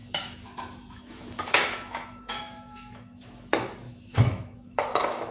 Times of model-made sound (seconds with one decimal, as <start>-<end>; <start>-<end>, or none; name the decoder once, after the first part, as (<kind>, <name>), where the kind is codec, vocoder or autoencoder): 0.0-5.3 (autoencoder, DAC-VAE)